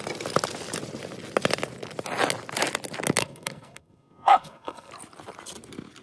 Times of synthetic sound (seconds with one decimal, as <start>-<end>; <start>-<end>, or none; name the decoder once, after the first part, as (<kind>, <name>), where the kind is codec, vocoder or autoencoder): 3.2-4.9 (codec, SNAC)